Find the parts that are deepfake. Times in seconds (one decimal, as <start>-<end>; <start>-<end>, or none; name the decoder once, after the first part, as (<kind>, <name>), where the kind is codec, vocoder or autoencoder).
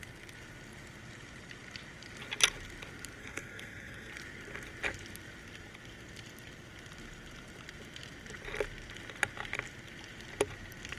3.2-4.1 (codec, SNAC)